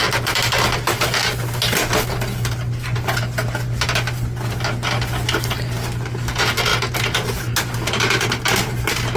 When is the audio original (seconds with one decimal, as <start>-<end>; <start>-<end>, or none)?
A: 0.0-9.2